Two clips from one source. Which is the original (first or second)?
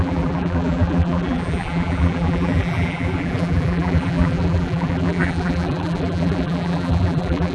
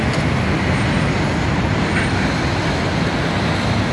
second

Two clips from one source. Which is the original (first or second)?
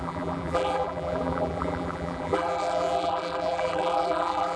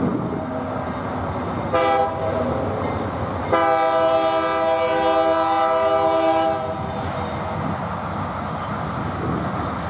second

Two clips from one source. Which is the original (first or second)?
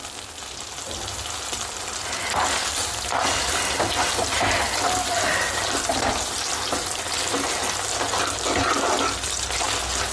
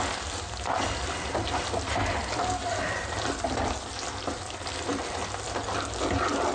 first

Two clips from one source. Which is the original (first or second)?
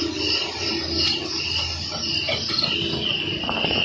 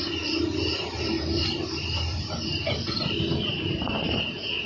first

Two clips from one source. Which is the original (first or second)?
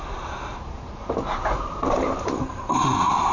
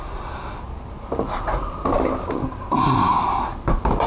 second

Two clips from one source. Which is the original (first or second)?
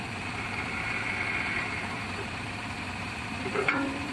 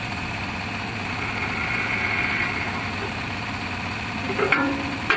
second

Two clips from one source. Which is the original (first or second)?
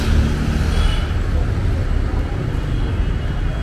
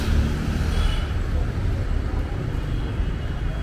first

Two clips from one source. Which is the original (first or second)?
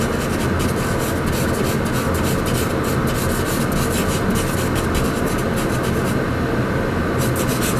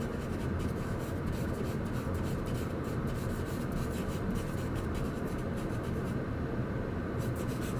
first